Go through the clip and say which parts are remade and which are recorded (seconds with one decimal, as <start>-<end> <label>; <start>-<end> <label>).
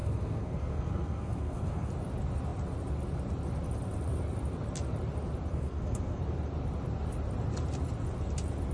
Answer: 0.0-1.9 remade; 1.9-5.5 recorded; 5.5-6.2 remade; 6.2-8.7 recorded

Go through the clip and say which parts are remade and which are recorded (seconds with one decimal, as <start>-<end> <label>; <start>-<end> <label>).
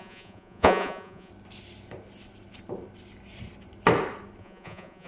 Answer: 0.0-1.3 remade; 1.3-4.4 recorded; 4.4-5.1 remade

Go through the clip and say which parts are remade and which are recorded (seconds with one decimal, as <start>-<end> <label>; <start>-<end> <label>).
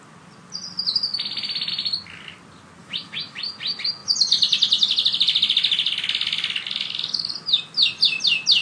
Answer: 0.0-2.8 recorded; 2.8-3.4 remade; 3.4-8.6 recorded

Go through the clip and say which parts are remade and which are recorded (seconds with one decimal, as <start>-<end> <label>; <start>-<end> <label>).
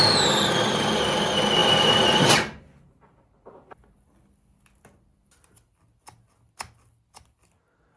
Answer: 0.0-8.0 recorded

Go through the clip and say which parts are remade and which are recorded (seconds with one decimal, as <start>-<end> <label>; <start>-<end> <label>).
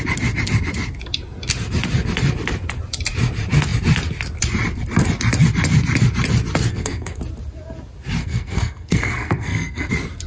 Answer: 0.0-6.7 recorded; 6.7-7.2 remade; 7.2-8.2 recorded; 8.2-9.9 remade; 9.9-10.3 recorded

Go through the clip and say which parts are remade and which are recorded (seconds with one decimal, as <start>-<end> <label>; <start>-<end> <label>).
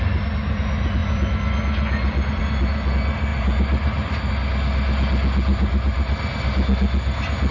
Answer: 0.0-3.3 recorded; 3.3-4.3 remade; 4.3-5.5 recorded; 5.5-6.1 remade; 6.1-7.5 recorded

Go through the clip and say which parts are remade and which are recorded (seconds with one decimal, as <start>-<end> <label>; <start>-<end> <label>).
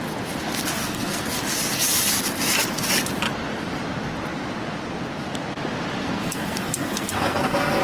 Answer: 0.0-0.8 recorded; 0.8-1.4 remade; 1.4-6.0 recorded; 6.0-7.8 remade